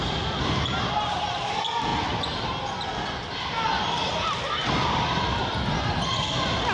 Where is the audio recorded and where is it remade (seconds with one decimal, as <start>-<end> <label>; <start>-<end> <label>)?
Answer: 0.0-6.7 recorded